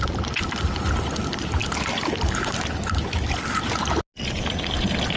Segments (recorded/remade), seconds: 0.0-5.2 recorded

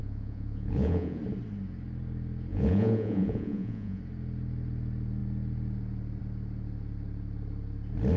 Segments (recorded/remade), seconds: 0.0-1.2 remade; 1.2-2.5 recorded; 2.5-4.0 remade; 4.0-8.2 recorded

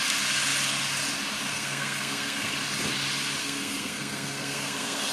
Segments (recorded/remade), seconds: 0.0-1.5 recorded; 1.5-2.5 remade; 2.5-3.4 recorded; 3.4-5.1 remade

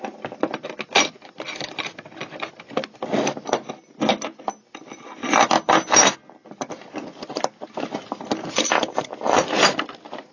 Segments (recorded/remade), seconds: 0.0-10.3 recorded

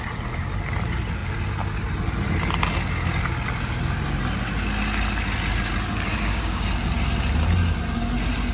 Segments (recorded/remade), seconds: 0.0-6.1 recorded; 6.1-6.7 remade; 6.7-8.5 recorded

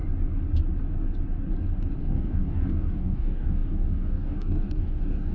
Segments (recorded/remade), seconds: 0.0-2.0 recorded; 2.0-5.3 remade

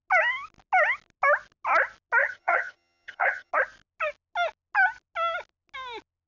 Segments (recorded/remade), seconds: 0.0-2.2 recorded; 2.2-3.5 remade; 3.5-6.3 recorded

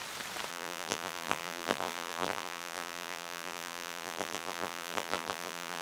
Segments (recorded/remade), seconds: 0.0-0.5 recorded; 0.5-5.8 remade